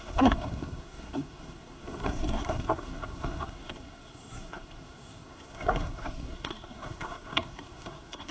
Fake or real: fake